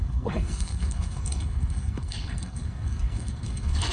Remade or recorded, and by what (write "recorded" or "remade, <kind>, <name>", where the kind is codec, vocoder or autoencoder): remade, codec, SNAC